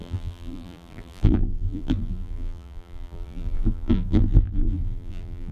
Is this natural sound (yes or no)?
no